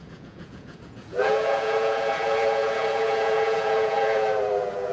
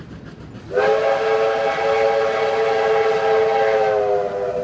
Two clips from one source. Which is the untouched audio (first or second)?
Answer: second